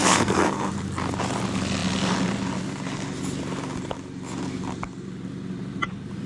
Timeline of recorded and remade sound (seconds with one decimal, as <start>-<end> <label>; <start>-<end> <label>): 0.0-0.7 remade; 0.7-6.3 recorded